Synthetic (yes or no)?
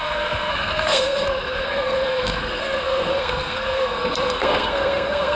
yes